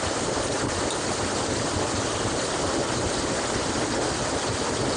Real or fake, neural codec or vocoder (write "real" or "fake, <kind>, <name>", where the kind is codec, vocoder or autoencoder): real